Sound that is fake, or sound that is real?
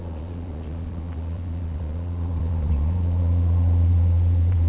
fake